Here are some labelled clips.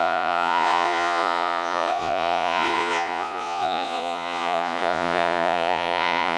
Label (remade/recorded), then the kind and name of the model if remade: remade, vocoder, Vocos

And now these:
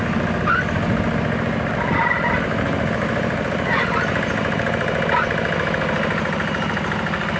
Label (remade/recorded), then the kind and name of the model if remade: recorded